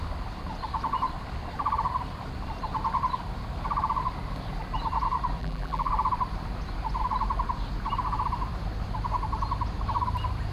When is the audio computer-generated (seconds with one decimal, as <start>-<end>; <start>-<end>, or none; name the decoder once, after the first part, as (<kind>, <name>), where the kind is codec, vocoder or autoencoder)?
5.4-5.9 (vocoder, BigVGAN v2)